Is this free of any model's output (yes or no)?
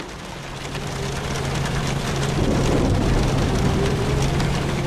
no